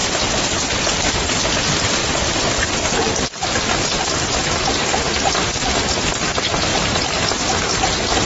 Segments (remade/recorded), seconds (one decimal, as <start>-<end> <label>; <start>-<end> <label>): 0.0-1.4 remade; 1.4-2.0 recorded; 2.0-4.7 remade; 4.7-6.7 recorded; 6.7-7.2 remade; 7.2-8.3 recorded

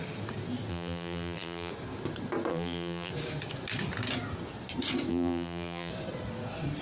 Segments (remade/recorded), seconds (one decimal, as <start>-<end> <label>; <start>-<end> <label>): 0.0-0.7 recorded; 0.7-1.7 remade; 1.7-2.5 recorded; 2.5-3.1 remade; 3.1-5.1 recorded; 5.1-5.9 remade; 5.9-6.8 recorded